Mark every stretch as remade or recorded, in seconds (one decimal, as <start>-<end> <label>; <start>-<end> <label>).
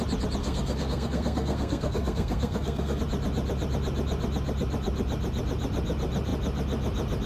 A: 0.0-0.4 recorded; 0.4-3.0 remade; 3.0-7.3 recorded